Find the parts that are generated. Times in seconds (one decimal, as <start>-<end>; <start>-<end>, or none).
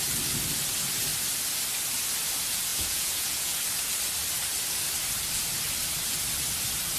2.7-3.6